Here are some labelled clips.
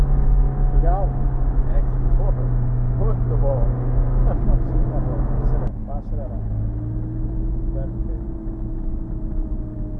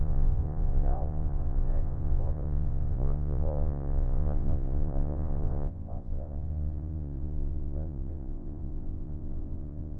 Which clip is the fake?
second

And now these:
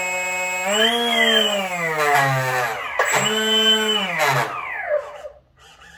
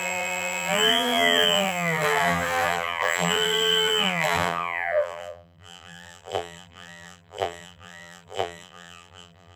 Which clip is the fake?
second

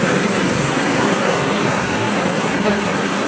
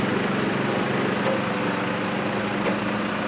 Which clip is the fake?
first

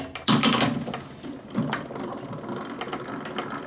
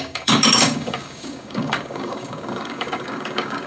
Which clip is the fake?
second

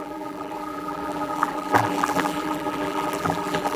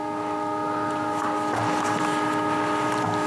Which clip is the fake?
first